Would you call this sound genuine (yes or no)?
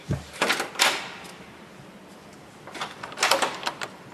yes